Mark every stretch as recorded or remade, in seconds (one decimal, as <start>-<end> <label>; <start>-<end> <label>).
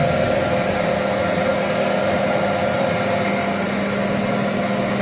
0.0-0.8 remade; 0.8-5.0 recorded